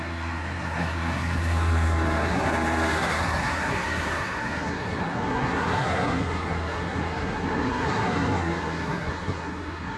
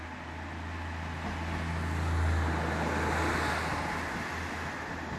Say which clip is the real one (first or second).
second